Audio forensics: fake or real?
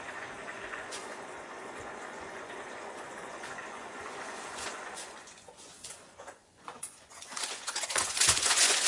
fake